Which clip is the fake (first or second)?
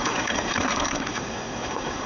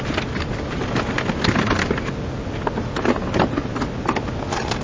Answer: first